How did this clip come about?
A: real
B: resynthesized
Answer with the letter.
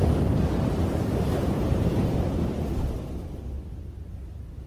A